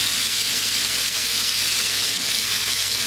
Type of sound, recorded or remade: remade